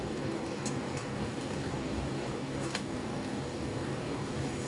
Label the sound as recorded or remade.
remade